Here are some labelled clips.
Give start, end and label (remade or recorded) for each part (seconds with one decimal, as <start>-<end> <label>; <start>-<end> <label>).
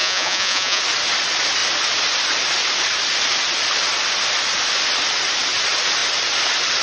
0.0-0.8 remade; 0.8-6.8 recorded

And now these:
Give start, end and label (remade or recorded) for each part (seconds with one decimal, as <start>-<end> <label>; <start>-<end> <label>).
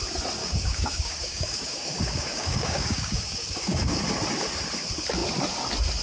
0.0-0.4 recorded; 0.4-4.0 remade; 4.0-6.0 recorded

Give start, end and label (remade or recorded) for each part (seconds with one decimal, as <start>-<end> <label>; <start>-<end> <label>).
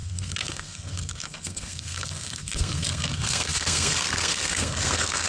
0.0-5.3 remade